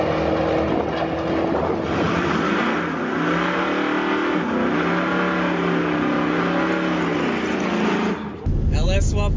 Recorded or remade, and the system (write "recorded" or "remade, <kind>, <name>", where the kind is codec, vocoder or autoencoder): recorded